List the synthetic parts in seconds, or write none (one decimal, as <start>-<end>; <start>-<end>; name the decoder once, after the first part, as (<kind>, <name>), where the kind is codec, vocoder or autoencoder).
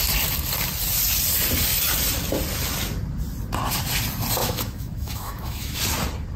4.4-5.8 (autoencoder, DAC-VAE)